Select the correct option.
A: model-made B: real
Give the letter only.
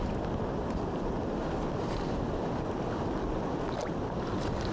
B